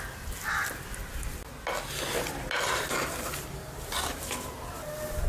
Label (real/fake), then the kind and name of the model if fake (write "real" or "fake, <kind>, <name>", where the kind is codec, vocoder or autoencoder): real